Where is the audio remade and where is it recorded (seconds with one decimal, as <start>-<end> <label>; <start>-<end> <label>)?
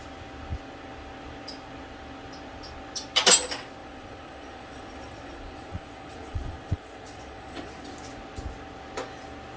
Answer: 0.0-3.8 recorded; 3.8-7.9 remade; 7.9-9.6 recorded